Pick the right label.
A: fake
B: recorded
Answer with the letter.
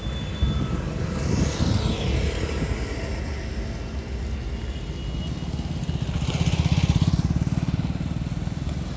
B